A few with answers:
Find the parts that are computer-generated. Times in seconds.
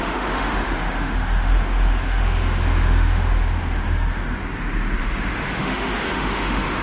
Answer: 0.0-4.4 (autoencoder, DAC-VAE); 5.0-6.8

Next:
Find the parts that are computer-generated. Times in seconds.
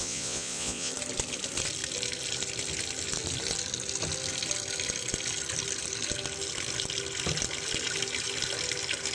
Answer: 0.0-0.9 (vocoder, Vocos)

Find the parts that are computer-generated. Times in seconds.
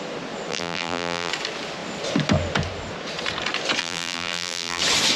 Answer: 0.5-1.3 (vocoder, BigVGAN v2); 3.8-4.8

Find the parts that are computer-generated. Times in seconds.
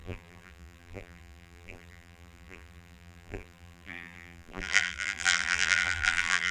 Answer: 0.0-6.5 (vocoder, BigVGAN v2)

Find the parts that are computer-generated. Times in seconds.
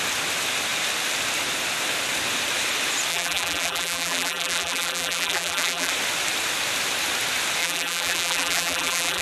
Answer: 3.1-5.9 (vocoder, BigVGAN v2); 7.6-9.2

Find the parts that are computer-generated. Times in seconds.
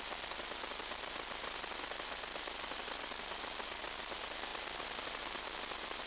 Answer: 4.5-5.6 (vocoder, BigVGAN v2)